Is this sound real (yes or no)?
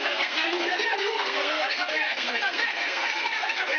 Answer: no